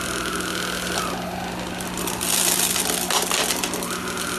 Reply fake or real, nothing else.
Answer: real